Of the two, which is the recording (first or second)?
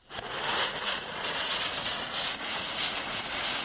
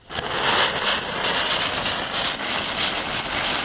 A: second